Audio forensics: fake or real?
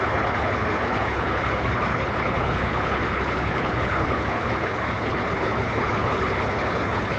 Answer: fake